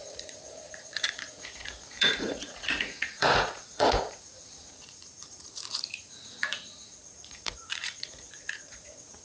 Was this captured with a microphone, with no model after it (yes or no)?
no